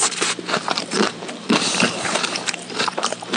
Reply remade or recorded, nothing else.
remade